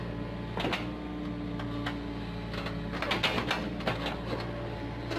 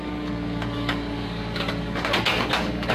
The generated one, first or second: second